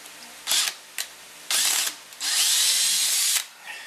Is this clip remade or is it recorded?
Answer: recorded